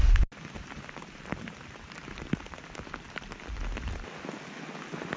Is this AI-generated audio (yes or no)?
no